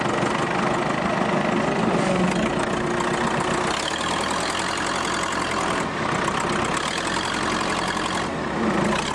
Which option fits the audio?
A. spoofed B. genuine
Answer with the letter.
B